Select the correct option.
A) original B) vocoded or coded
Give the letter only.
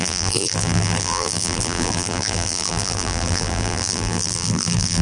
B